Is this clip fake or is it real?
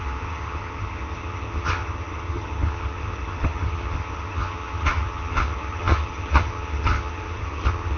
fake